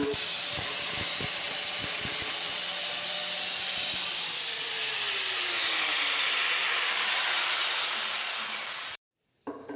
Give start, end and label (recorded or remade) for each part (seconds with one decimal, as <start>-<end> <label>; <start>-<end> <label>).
0.0-2.7 remade; 2.7-4.1 recorded; 4.1-9.8 remade